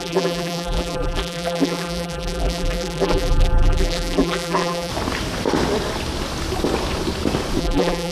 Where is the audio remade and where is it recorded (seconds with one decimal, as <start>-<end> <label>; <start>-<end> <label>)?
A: 0.0-4.9 remade; 4.9-7.6 recorded; 7.6-8.1 remade